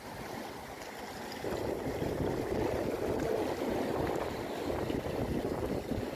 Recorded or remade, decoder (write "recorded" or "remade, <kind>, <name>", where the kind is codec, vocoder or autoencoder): recorded